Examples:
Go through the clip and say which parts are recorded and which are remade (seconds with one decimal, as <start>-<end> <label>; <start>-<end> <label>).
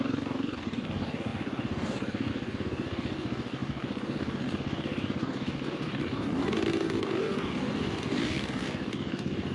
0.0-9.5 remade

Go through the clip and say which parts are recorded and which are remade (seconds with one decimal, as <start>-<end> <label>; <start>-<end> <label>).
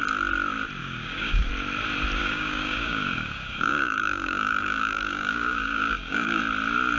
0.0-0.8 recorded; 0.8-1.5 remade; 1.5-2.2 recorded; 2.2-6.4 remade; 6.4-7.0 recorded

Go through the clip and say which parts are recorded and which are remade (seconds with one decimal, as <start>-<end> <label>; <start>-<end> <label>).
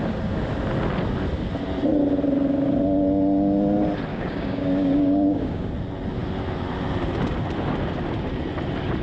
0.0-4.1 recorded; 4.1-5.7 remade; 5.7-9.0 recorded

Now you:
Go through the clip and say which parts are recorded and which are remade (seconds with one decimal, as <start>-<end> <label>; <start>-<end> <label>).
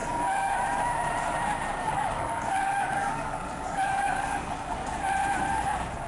0.0-0.5 remade; 0.5-1.7 recorded; 1.7-5.0 remade; 5.0-6.1 recorded